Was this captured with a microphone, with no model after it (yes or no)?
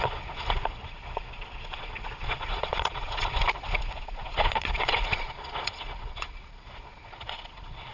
no